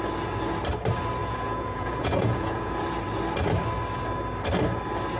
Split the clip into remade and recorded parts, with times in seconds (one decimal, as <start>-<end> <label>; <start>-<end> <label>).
0.0-1.2 recorded; 1.2-2.8 remade; 2.8-5.2 recorded